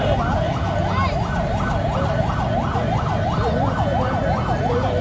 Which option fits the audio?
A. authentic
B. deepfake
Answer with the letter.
A